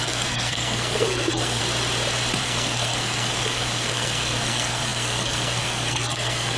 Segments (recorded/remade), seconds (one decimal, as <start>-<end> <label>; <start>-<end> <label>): 0.0-1.6 remade; 1.6-2.4 recorded; 2.4-6.6 remade